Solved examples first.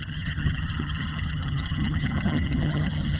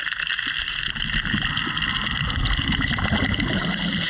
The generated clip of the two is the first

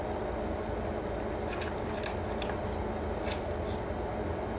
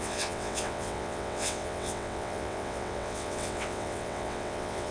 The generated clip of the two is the second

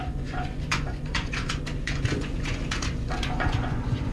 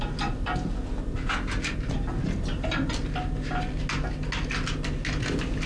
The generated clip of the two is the first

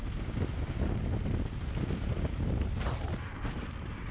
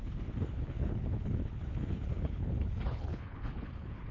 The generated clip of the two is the second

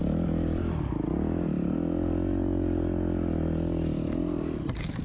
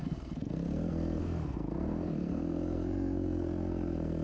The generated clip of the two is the second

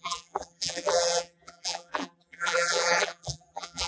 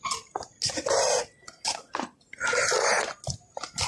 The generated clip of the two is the first